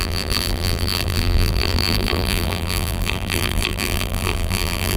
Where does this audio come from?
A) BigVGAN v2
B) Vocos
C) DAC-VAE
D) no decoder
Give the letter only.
A